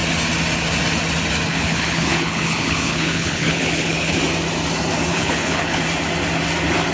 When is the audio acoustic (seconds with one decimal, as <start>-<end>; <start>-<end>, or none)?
0.0-1.5; 4.1-5.1; 5.8-6.9